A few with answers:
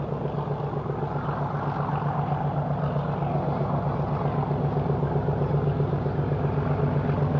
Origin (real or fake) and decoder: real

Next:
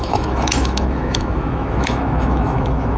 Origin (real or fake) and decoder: fake, autoencoder, DAC-VAE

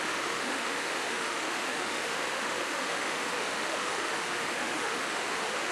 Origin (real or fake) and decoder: fake, autoencoder, DAC-VAE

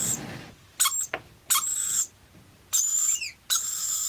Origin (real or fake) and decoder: real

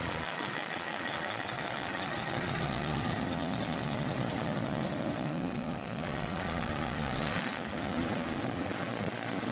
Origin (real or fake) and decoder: fake, vocoder, Vocos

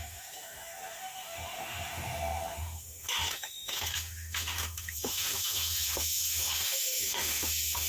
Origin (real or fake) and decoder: fake, autoencoder, DAC-VAE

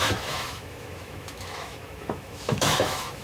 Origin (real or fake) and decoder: fake, autoencoder, DAC-VAE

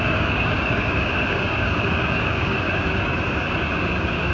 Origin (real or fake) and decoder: fake, codec, DAC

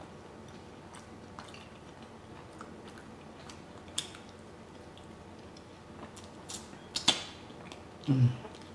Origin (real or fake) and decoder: real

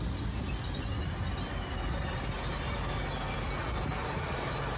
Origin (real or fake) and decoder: real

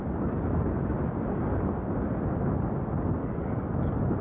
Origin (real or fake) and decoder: real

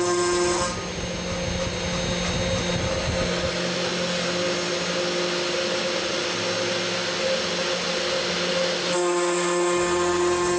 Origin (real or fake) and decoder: real